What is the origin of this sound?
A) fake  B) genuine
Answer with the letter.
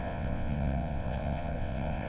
A